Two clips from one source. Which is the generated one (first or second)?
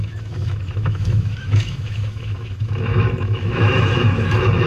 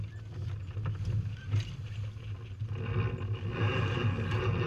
first